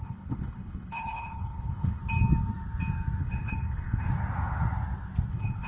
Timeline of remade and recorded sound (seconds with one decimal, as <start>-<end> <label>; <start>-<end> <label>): 0.0-2.0 remade; 2.0-3.2 recorded; 3.2-4.0 remade; 4.0-5.3 recorded; 5.3-5.7 remade